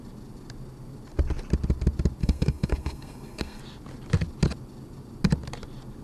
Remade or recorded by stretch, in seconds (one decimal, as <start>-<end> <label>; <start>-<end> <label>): 0.0-2.2 recorded; 2.2-3.6 remade; 3.6-6.0 recorded